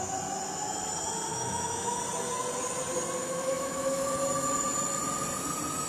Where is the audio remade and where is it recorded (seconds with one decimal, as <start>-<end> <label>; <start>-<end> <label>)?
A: 0.0-1.3 recorded; 1.3-2.0 remade; 2.0-3.2 recorded; 3.2-4.1 remade; 4.1-5.9 recorded